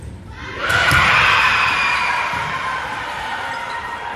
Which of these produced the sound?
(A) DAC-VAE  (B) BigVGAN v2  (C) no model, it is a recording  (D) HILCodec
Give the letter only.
B